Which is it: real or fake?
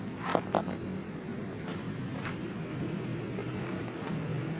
real